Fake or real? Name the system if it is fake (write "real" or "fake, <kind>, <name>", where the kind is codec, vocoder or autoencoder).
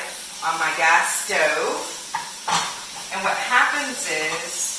real